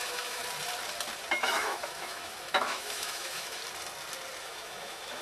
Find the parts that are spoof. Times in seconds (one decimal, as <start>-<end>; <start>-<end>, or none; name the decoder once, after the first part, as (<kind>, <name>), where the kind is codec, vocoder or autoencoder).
0.0-0.4 (autoencoder, DAC-VAE); 1.3-3.6; 4.4-5.2